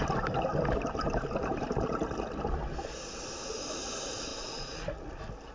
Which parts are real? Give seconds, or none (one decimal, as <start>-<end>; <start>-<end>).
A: 0.0-4.3; 5.1-5.5